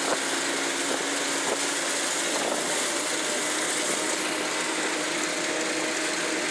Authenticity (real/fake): real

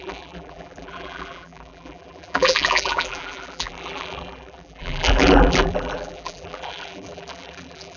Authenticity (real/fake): fake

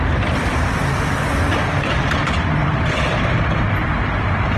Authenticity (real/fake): fake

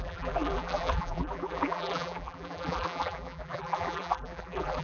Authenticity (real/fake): fake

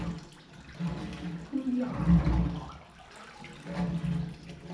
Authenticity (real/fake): real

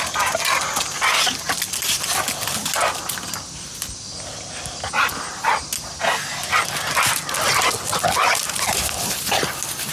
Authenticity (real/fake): real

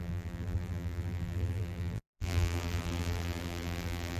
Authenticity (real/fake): fake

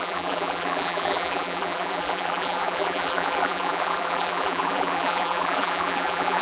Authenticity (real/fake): fake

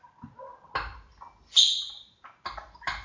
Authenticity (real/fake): real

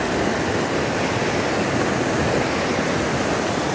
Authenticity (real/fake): real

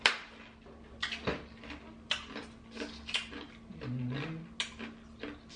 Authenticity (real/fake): real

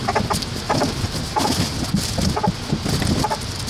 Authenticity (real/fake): real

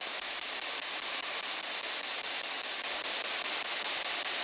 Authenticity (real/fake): real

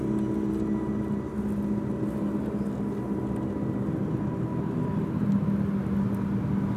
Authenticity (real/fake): real